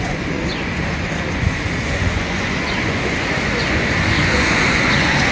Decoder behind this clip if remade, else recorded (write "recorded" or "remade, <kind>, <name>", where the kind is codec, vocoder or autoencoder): remade, vocoder, Vocos